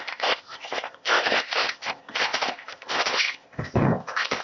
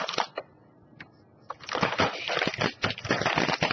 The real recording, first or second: second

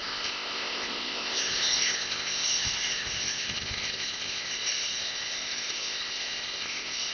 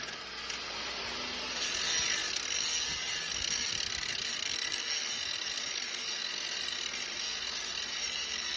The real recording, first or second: second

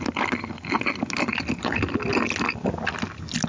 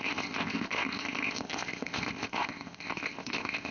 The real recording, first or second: first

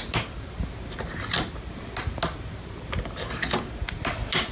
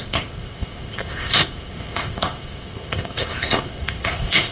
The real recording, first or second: first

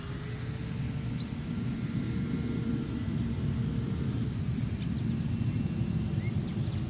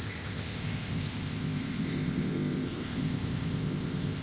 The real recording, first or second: first